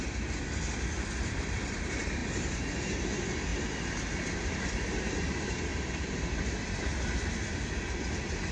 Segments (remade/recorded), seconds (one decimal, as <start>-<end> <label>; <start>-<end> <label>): 0.0-2.2 recorded; 2.2-2.8 remade; 2.8-3.5 recorded; 3.5-5.2 remade; 5.2-5.7 recorded; 5.7-6.9 remade; 6.9-8.5 recorded